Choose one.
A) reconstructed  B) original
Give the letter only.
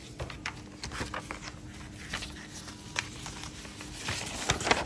B